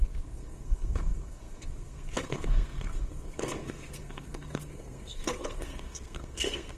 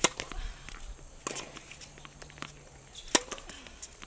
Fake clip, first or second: first